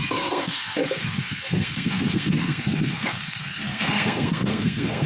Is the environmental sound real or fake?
fake